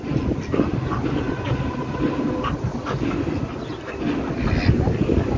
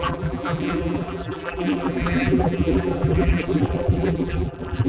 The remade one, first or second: second